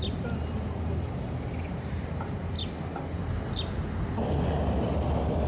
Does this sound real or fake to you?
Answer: real